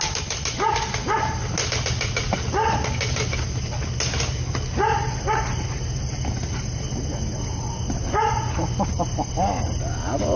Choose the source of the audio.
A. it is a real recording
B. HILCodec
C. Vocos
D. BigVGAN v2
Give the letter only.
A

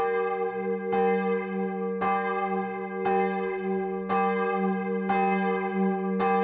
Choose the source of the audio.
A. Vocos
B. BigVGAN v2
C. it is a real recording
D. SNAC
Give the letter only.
C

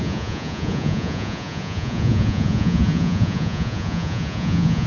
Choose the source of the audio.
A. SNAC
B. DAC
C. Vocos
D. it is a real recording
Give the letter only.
C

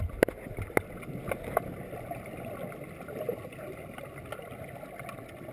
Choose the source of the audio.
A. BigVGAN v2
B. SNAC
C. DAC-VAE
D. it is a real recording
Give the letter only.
D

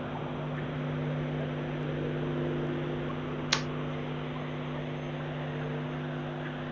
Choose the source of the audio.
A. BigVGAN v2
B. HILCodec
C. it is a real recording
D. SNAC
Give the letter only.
C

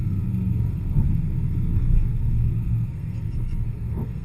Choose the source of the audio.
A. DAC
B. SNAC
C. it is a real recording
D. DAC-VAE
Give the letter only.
B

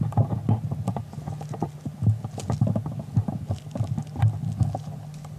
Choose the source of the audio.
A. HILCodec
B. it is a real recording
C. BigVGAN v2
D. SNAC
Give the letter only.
B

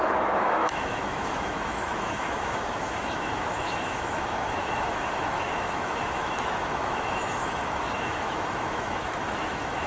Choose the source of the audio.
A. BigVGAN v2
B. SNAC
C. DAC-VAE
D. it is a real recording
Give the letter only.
C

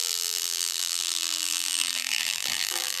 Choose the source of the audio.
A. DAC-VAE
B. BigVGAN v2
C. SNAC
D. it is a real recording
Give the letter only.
B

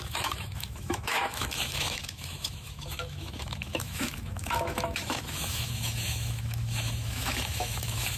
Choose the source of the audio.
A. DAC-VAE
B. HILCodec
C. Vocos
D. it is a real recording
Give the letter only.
A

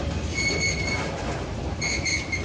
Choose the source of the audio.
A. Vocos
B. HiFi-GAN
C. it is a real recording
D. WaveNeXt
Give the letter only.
C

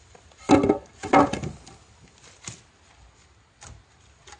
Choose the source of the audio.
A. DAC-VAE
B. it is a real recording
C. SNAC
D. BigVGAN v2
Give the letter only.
B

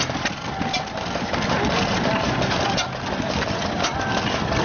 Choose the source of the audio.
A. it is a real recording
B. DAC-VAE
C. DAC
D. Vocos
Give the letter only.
A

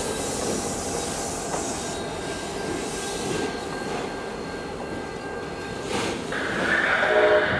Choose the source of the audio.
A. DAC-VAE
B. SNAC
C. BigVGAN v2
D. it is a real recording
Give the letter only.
D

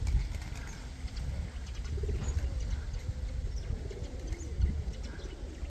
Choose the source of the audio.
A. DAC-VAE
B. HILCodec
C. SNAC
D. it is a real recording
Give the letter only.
D